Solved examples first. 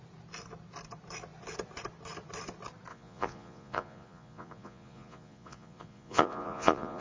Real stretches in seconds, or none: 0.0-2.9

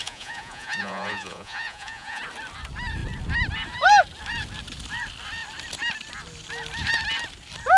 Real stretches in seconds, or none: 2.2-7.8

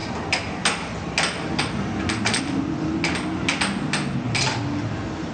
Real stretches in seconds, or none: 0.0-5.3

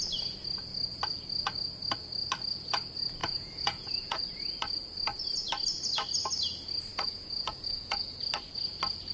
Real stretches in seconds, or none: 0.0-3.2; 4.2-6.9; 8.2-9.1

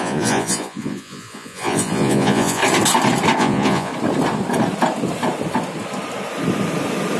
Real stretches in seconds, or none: 2.6-3.4; 3.9-7.2

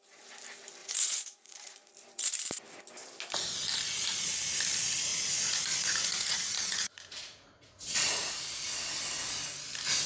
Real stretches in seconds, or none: 0.0-0.8; 1.9-5.1; 8.3-10.1

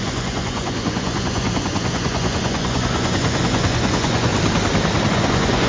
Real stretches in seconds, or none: 4.3-5.1